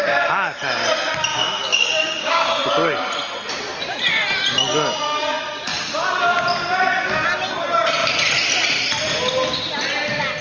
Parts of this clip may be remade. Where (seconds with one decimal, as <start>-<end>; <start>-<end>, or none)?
1.3-2.5